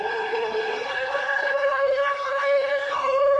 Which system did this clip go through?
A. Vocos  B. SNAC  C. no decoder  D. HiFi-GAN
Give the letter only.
B